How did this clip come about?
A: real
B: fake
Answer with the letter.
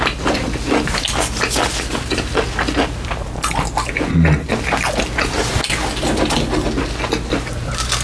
A